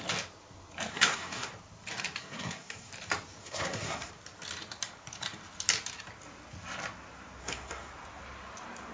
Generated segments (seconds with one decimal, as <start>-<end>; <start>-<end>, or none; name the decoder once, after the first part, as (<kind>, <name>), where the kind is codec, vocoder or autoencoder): 0.9-1.5 (codec, SNAC); 2.2-2.9; 3.4-4.1; 7.4-7.9